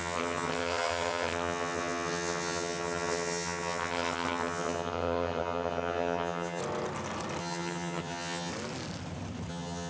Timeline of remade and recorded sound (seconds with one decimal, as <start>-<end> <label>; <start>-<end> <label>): 0.0-6.6 remade; 6.6-7.4 recorded; 7.4-8.5 remade; 8.5-9.5 recorded; 9.5-9.9 remade